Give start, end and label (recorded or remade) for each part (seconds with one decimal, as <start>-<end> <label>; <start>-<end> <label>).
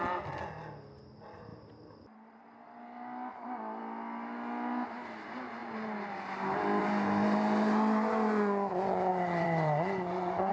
0.0-9.1 recorded; 9.1-10.5 remade